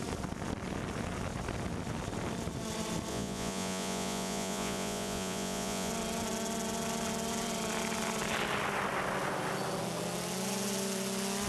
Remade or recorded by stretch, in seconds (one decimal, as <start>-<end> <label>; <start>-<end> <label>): 0.0-3.1 recorded; 3.1-5.9 remade; 5.9-11.5 recorded

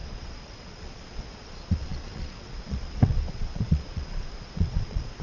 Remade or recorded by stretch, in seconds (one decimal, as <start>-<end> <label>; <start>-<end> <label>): 0.0-5.2 remade

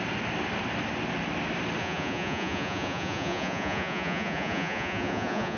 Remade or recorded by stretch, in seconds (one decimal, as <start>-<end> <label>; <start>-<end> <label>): 0.0-1.8 recorded; 1.8-5.6 remade

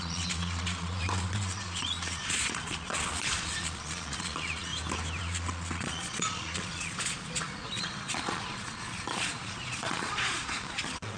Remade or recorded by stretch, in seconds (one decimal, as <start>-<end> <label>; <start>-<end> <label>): 0.0-4.7 remade; 4.7-5.2 recorded; 5.2-11.2 remade

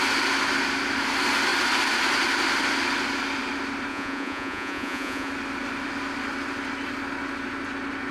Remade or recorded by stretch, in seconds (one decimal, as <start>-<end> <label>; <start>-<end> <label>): 0.0-3.9 recorded; 3.9-5.3 remade; 5.3-8.1 recorded

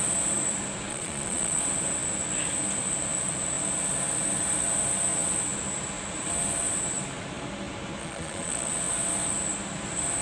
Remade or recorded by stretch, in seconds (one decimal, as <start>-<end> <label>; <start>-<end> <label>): 0.0-0.9 recorded; 0.9-1.6 remade; 1.6-8.0 recorded; 8.0-8.7 remade; 8.7-10.2 recorded